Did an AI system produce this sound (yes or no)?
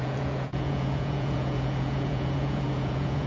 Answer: yes